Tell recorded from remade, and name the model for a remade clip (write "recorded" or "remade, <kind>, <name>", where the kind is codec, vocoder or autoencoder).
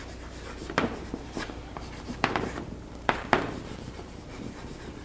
remade, vocoder, BigVGAN v2